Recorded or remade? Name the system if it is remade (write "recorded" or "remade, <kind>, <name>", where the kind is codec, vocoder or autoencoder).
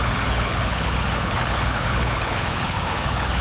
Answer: remade, codec, HILCodec